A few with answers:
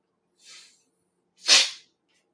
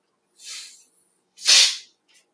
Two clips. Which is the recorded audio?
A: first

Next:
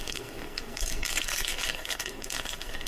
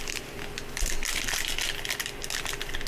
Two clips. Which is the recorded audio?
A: second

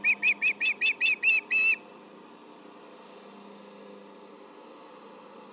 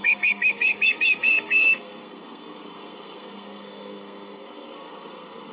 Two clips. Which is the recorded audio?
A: first